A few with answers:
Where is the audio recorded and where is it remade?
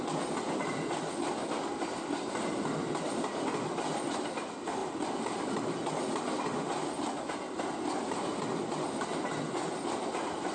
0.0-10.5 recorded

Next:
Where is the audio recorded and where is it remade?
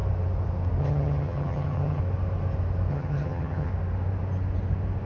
0.0-0.8 recorded; 0.8-2.0 remade; 2.0-2.9 recorded; 2.9-3.7 remade; 3.7-5.1 recorded